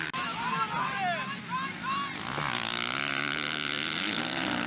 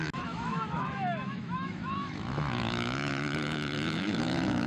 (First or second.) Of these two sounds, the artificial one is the second